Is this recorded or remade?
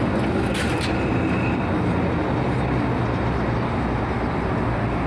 recorded